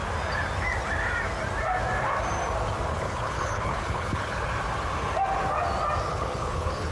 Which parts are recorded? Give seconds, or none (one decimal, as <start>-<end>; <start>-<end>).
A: 0.0-2.9; 4.5-6.1